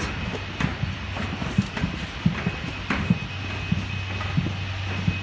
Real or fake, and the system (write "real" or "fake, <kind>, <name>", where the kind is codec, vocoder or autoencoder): real